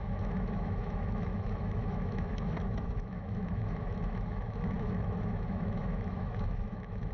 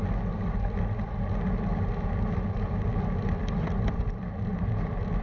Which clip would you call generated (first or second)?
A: first